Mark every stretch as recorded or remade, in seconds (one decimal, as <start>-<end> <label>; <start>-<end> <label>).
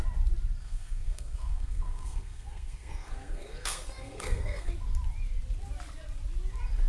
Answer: 0.0-0.6 recorded; 0.6-4.7 remade; 4.7-6.9 recorded